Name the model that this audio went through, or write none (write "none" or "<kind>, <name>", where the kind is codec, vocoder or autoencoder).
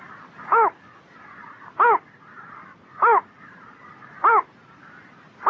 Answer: none